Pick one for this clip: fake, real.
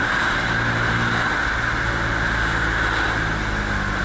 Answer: real